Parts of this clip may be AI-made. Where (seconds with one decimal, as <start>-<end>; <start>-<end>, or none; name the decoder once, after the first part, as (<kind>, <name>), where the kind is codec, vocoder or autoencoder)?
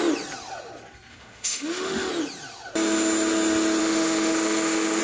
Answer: 1.1-2.1 (autoencoder, DAC-VAE); 3.8-5.0